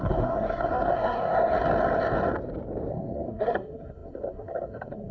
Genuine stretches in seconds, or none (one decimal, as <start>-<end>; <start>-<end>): 1.5-2.9